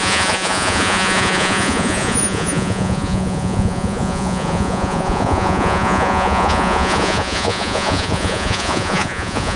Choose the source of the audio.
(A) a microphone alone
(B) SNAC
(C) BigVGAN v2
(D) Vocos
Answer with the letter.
D